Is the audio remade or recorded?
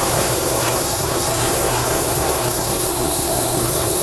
remade